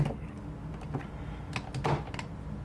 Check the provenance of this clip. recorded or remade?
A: recorded